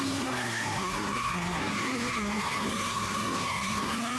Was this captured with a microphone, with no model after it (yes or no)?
no